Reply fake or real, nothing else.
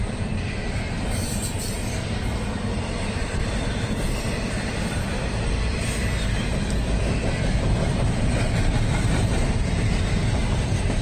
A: fake